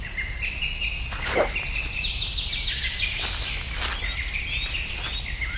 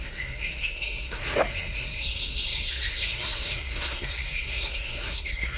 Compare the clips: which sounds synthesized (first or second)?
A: second